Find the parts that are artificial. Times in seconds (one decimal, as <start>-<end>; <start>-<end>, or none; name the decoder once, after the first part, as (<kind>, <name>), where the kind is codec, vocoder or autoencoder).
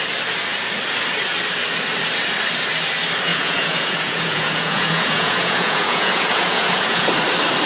3.3-7.1 (vocoder, Vocos)